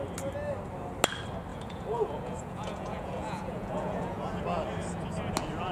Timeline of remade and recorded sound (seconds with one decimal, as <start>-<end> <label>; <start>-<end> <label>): 0.0-1.5 recorded; 1.5-4.4 remade; 4.4-5.7 recorded